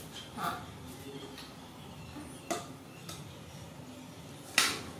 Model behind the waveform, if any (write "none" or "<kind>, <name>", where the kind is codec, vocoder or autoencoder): none